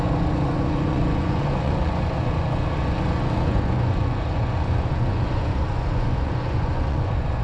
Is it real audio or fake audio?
fake